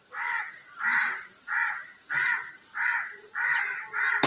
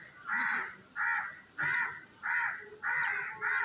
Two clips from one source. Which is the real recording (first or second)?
second